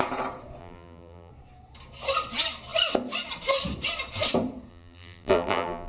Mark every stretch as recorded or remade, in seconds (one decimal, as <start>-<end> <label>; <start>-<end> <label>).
0.0-0.6 recorded; 0.6-1.3 remade; 1.3-4.7 recorded; 4.7-5.9 remade